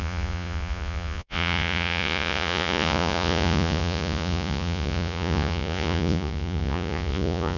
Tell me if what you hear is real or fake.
fake